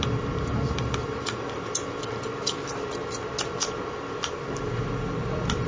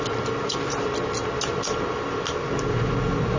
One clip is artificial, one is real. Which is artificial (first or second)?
first